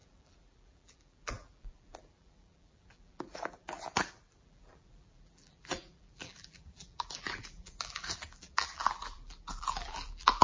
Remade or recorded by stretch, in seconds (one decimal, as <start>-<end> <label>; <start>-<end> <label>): 0.0-10.4 remade